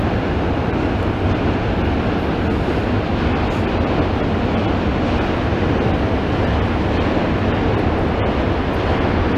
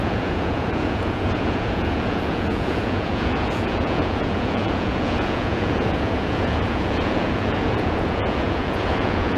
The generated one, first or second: second